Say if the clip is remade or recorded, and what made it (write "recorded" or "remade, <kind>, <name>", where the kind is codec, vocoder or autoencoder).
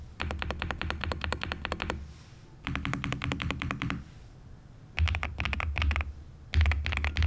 recorded